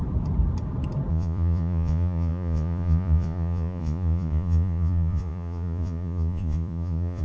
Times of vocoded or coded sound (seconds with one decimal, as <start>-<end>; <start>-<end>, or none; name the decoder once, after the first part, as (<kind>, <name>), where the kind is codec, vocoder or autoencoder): 1.1-7.2 (vocoder, Vocos)